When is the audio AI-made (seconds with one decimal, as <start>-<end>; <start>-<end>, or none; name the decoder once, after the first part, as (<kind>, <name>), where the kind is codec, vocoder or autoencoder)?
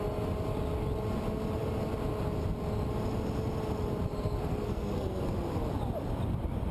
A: 4.2-5.3 (codec, SNAC)